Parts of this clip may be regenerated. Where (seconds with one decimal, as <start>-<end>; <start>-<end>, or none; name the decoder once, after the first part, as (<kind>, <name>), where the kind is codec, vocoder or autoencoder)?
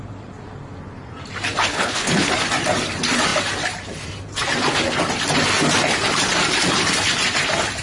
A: 1.7-2.3 (codec, HILCodec)